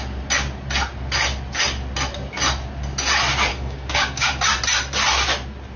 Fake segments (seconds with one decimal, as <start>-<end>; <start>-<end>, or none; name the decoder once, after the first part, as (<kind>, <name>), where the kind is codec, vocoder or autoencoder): 3.5-4.3 (codec, DAC)